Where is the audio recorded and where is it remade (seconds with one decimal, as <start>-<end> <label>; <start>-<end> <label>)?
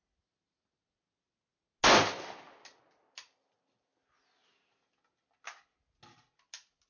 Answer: 0.0-6.9 recorded